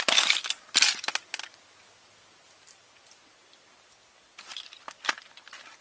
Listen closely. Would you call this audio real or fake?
real